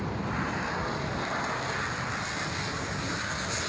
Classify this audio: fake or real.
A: real